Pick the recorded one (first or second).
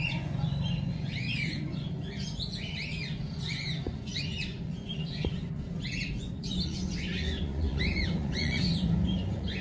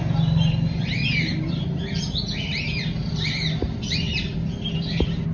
second